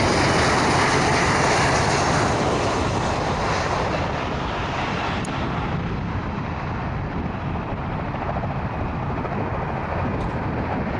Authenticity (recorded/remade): recorded